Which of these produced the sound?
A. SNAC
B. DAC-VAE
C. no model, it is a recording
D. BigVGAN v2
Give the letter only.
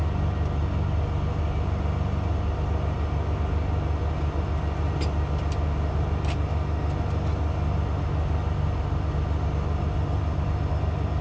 C